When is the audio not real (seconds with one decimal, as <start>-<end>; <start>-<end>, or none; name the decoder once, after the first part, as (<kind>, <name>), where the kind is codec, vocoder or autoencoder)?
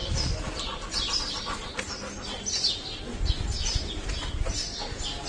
none